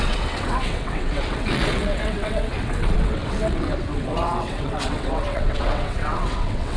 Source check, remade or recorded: remade